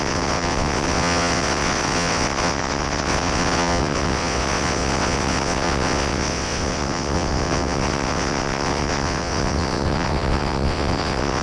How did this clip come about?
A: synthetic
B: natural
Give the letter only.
A